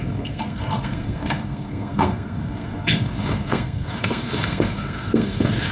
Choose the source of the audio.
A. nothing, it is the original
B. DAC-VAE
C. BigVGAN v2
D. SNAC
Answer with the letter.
D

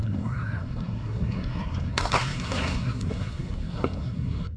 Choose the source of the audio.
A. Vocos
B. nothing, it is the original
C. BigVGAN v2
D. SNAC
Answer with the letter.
D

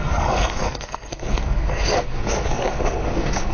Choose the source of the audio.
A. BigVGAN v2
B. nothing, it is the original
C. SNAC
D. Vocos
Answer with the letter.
C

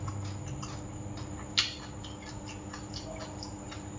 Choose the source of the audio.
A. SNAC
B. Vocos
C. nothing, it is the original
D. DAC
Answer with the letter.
C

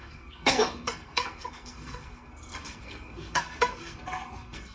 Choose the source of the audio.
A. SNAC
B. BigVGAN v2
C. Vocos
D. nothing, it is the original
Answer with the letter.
A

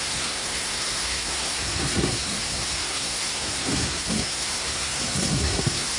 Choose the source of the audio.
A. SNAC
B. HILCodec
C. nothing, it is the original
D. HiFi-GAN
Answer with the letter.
A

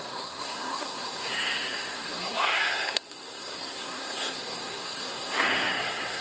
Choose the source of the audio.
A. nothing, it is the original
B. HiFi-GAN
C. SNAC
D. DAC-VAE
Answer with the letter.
C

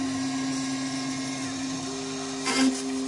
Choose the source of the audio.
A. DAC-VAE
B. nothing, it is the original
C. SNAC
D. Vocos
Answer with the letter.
B